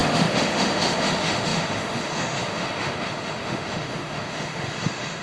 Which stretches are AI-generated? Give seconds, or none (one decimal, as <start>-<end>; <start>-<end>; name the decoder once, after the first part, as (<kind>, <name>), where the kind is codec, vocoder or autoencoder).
0.0-5.2 (autoencoder, DAC-VAE)